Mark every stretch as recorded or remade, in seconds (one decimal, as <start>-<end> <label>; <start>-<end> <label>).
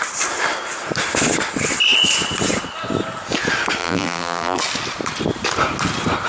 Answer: 0.0-3.8 recorded; 3.8-4.6 remade; 4.6-6.3 recorded